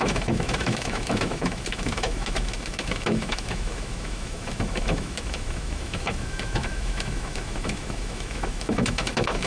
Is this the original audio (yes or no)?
no